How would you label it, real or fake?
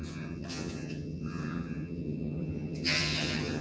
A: fake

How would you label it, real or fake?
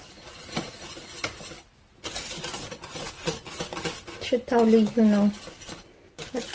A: real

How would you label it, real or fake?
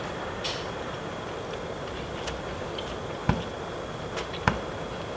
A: real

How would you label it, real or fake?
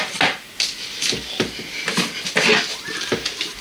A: real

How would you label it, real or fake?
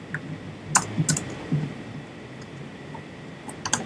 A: real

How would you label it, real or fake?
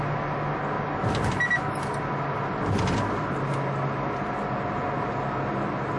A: real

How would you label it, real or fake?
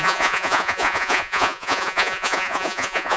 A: fake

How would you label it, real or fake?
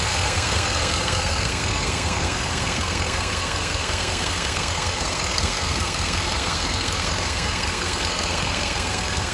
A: fake